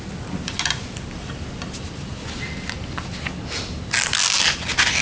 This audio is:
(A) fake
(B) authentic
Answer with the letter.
B